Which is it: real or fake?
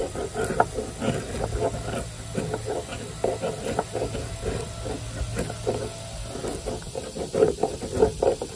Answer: real